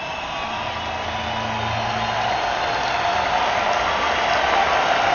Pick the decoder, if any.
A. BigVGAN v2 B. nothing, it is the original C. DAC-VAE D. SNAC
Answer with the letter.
B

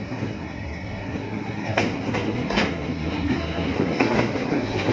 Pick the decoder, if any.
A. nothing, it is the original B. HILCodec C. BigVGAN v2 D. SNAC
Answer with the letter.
D